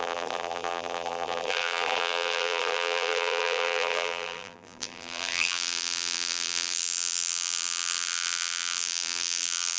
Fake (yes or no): yes